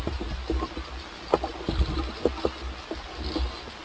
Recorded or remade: recorded